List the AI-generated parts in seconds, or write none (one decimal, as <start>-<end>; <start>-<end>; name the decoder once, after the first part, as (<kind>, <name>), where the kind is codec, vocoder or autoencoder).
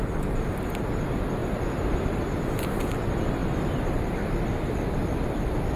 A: 1.4-2.3 (vocoder, BigVGAN v2)